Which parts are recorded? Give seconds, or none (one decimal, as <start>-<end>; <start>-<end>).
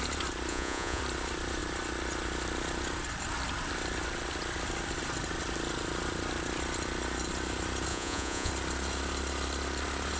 0.0-0.5; 1.0-7.9; 8.5-10.2